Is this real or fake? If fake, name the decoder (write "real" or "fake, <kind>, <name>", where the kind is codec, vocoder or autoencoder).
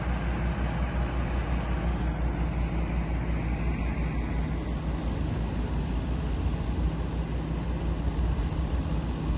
real